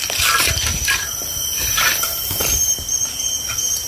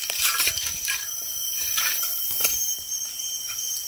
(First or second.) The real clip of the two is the first